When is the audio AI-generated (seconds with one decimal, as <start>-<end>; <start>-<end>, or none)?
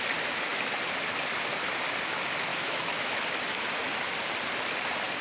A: 2.5-3.2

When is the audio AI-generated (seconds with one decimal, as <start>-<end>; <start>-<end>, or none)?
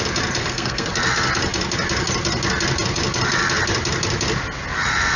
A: 0.4-0.9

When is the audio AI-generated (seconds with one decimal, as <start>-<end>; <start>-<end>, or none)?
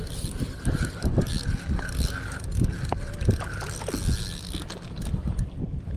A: 0.0-1.3; 4.9-6.0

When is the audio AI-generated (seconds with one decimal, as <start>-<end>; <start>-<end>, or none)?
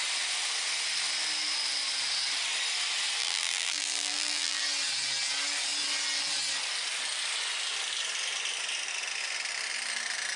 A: 3.2-4.6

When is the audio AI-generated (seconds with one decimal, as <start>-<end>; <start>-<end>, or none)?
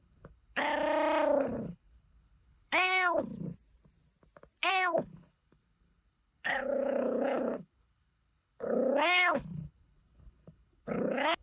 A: 0.0-0.7; 1.4-3.3; 4.7-11.4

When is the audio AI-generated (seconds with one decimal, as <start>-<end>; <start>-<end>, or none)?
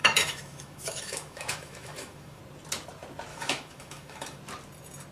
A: 0.0-2.4; 3.3-4.4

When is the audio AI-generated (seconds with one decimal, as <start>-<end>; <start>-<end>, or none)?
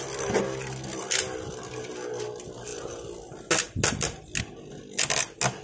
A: none